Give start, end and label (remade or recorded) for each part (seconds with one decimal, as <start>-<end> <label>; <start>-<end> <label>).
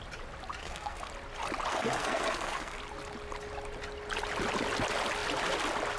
0.0-0.6 recorded; 0.6-1.1 remade; 1.1-1.7 recorded; 1.7-2.8 remade; 2.8-6.0 recorded